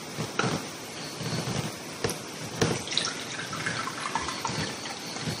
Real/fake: real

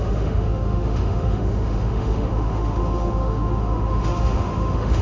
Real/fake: fake